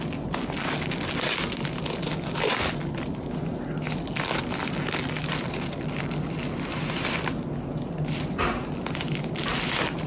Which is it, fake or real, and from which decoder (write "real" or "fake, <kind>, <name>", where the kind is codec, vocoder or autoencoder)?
real